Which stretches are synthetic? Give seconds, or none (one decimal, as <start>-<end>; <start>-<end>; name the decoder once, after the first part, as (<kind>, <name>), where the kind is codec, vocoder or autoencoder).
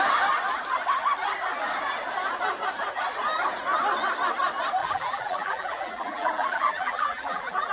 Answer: 4.8-7.7 (vocoder, BigVGAN v2)